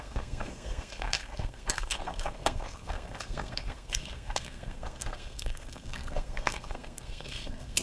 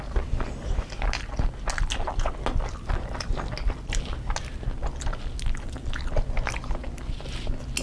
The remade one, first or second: first